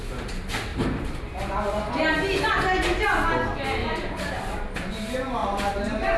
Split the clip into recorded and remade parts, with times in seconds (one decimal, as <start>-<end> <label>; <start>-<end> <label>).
0.0-0.7 recorded; 0.7-1.2 remade; 1.2-3.8 recorded; 3.8-4.9 remade; 4.9-5.4 recorded; 5.4-6.2 remade